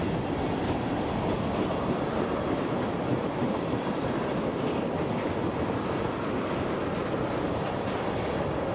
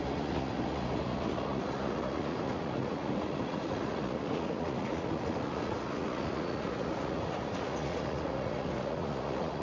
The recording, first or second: first